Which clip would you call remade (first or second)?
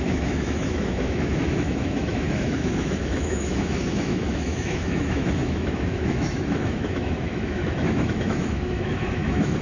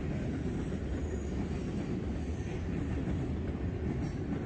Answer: first